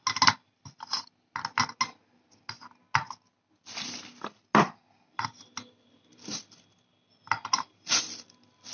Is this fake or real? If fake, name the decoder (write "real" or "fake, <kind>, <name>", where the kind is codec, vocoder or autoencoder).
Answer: real